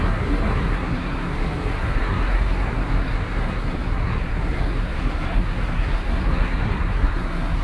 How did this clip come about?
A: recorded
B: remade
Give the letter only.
B